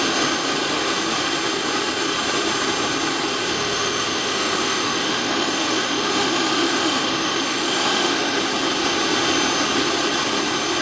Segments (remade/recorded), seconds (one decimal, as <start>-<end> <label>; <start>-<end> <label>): 0.0-3.5 recorded; 3.5-8.4 remade; 8.4-10.8 recorded